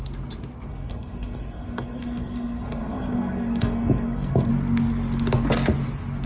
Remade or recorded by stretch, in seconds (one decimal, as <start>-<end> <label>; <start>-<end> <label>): 0.0-0.7 recorded; 0.7-4.5 remade; 4.5-6.3 recorded